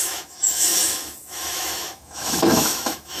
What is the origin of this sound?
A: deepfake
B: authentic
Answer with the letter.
A